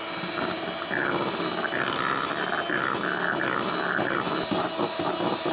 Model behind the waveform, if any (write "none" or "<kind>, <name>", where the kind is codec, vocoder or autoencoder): none